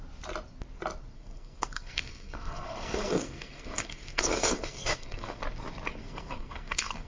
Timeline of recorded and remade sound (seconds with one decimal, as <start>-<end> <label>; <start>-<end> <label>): 0.0-1.1 recorded; 1.1-5.4 remade; 5.4-6.0 recorded; 6.0-7.1 remade